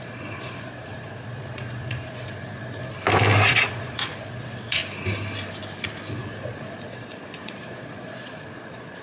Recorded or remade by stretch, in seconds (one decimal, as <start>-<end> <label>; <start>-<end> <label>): 0.0-3.0 remade; 3.0-3.5 recorded; 3.5-4.8 remade; 4.8-6.1 recorded; 6.1-9.0 remade